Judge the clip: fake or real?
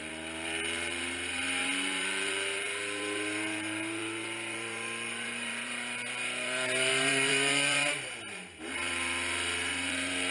fake